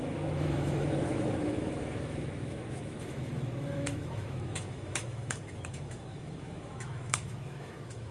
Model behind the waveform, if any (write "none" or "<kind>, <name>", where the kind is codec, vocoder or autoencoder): autoencoder, DAC-VAE